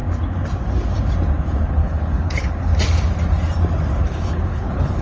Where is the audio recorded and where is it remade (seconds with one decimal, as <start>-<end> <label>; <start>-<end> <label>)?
0.0-1.7 recorded; 1.7-2.7 remade; 2.7-4.0 recorded; 4.0-5.0 remade